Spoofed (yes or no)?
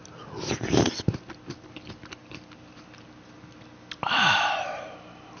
no